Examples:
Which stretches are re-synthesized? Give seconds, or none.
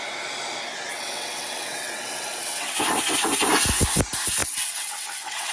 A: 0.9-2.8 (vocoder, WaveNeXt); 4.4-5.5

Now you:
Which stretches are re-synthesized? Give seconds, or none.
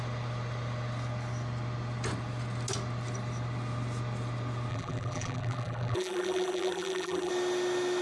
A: 4.7-7.3 (vocoder, BigVGAN v2)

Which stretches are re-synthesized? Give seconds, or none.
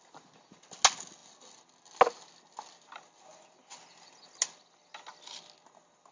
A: none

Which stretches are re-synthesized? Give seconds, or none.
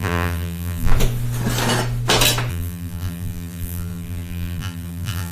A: 0.0-0.9 (vocoder, BigVGAN v2); 2.5-5.3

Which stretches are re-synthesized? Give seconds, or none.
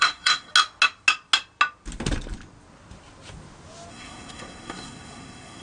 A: 0.0-0.5 (codec, SNAC); 3.9-5.6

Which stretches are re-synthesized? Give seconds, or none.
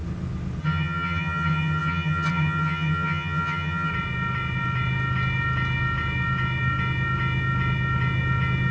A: 0.6-3.9 (vocoder, HiFi-GAN)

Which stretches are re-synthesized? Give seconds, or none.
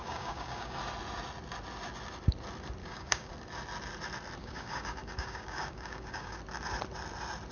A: 0.0-0.8 (codec, DAC); 2.8-3.3; 4.4-6.4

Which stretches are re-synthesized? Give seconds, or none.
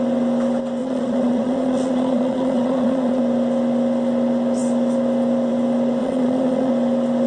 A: 0.8-3.2 (vocoder, Vocos); 6.0-6.7